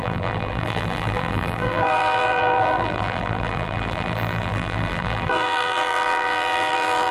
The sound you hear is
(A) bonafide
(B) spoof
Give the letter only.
B